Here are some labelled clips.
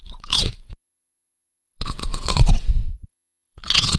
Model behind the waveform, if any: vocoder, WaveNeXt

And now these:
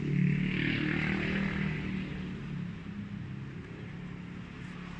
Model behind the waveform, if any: none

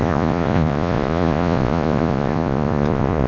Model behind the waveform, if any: vocoder, Vocos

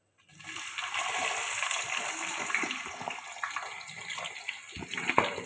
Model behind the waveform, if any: none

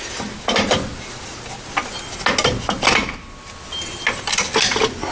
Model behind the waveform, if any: none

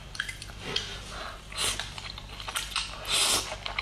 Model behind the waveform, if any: none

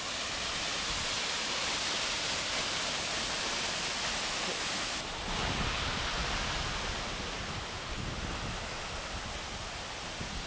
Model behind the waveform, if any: none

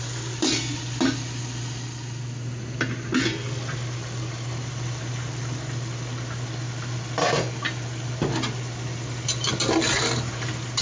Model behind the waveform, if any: none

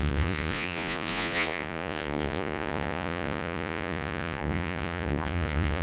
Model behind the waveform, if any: vocoder, Vocos